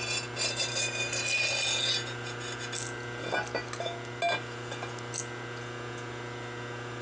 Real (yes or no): yes